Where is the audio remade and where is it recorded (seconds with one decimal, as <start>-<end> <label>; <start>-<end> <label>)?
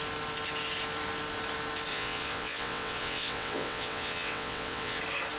0.0-1.9 recorded; 1.9-5.0 remade; 5.0-5.4 recorded